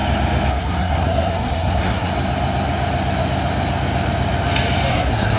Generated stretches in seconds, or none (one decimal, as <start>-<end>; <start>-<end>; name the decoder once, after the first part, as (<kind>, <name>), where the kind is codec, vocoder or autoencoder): 0.5-2.1 (codec, SNAC); 4.9-5.4